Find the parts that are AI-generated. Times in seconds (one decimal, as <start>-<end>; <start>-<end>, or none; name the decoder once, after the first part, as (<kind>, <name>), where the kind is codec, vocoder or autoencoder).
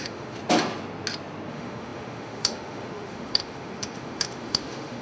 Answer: 0.0-0.4 (autoencoder, DAC-VAE); 1.5-5.0